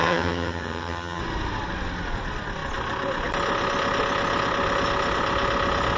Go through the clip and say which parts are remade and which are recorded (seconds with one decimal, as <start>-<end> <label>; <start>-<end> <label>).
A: 0.0-1.2 remade; 1.2-6.0 recorded